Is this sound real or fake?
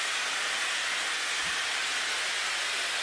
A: real